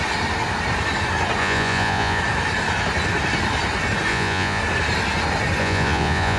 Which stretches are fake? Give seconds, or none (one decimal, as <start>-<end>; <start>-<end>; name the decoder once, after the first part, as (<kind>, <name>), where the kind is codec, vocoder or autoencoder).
1.4-2.2 (vocoder, Vocos); 4.1-4.6; 5.6-6.4